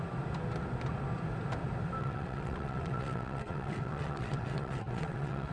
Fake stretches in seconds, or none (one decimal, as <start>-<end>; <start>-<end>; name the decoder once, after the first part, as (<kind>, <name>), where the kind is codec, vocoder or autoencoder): 2.0-5.5 (vocoder, WaveNeXt)